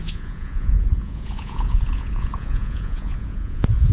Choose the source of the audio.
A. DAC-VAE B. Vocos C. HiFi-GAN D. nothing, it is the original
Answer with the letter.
B